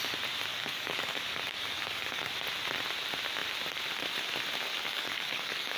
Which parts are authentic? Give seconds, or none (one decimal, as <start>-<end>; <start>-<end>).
0.0-0.5; 2.3-4.7